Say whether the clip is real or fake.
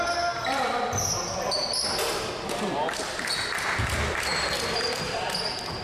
real